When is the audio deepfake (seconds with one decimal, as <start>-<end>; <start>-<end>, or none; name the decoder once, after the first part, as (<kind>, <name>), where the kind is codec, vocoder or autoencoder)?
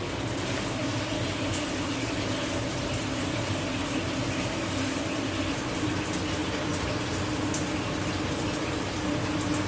none